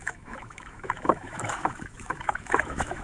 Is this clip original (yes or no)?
no